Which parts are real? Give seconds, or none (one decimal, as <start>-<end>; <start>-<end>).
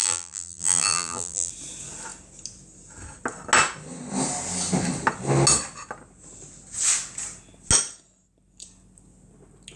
1.5-9.8